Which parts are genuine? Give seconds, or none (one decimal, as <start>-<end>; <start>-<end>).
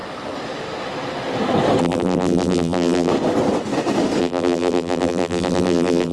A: 0.0-1.8; 3.1-4.2